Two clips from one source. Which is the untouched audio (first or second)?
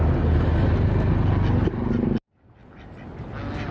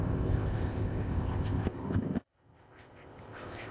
first